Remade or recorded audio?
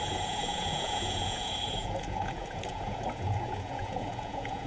remade